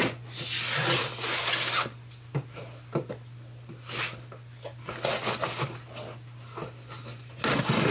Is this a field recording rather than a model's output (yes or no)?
yes